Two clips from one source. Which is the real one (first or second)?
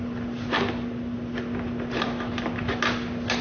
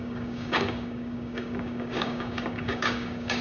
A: first